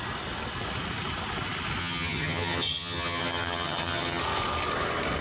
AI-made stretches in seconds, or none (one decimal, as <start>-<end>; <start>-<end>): 1.8-4.2